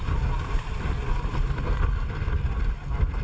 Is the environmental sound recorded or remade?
recorded